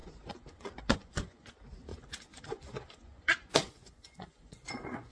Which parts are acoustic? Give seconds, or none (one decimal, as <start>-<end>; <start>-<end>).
1.5-1.9